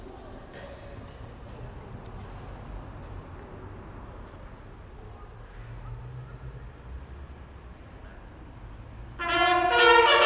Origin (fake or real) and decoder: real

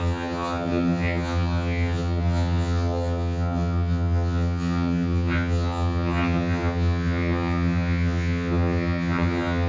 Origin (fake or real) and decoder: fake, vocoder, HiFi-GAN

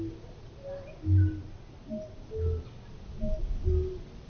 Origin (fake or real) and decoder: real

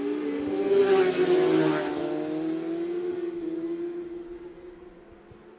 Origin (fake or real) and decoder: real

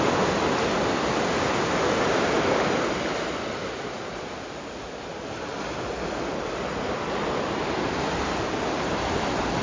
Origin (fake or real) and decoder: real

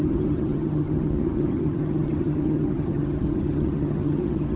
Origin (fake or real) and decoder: fake, vocoder, HiFi-GAN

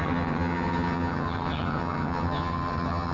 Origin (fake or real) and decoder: fake, vocoder, HiFi-GAN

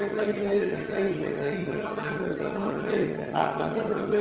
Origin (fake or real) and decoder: fake, vocoder, HiFi-GAN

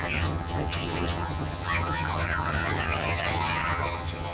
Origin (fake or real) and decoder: fake, vocoder, HiFi-GAN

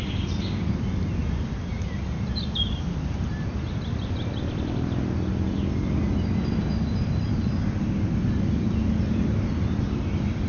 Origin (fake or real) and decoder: real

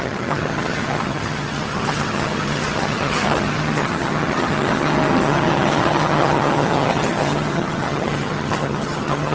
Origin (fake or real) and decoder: fake, vocoder, HiFi-GAN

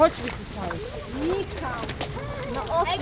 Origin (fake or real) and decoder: real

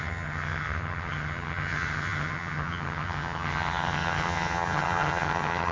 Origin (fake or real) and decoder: fake, vocoder, HiFi-GAN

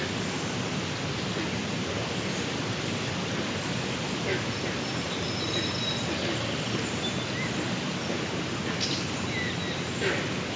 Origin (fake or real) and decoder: real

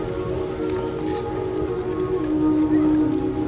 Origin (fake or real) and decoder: real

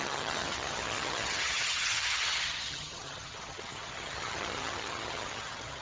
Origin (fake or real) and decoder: fake, vocoder, HiFi-GAN